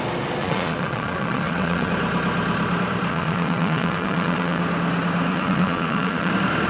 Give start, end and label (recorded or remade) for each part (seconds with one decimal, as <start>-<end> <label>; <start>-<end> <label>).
0.0-0.4 recorded; 0.4-1.9 remade; 1.9-3.1 recorded; 3.1-4.6 remade; 4.6-5.3 recorded; 5.3-6.3 remade; 6.3-6.7 recorded